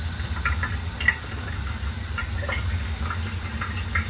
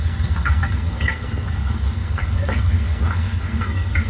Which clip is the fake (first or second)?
second